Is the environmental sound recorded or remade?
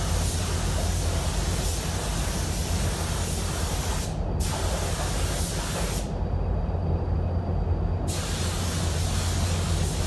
recorded